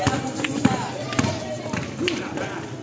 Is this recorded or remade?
recorded